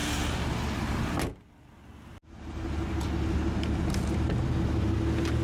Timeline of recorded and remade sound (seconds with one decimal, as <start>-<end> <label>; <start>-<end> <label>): 0.0-5.4 recorded